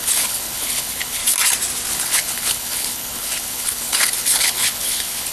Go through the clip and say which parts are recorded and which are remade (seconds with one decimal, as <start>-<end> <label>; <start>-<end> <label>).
0.0-1.2 remade; 1.2-1.9 recorded; 1.9-5.3 remade